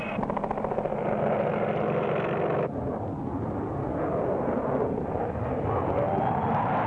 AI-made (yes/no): no